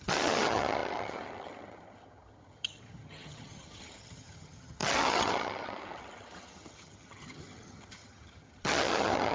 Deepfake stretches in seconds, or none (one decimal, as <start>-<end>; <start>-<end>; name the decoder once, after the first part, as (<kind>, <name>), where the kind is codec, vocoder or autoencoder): 0.0-9.3 (vocoder, HiFi-GAN)